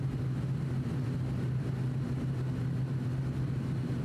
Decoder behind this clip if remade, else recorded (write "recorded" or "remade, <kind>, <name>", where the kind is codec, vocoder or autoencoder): recorded